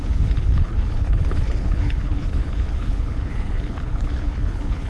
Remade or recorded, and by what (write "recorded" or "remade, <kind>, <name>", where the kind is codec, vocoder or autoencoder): remade, codec, HILCodec